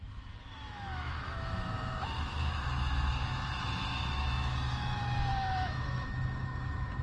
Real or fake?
fake